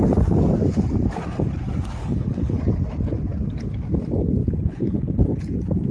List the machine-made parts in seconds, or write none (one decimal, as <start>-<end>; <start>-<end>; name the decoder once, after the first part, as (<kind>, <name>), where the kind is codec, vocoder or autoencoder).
2.0-2.6 (codec, HILCodec); 4.4-5.4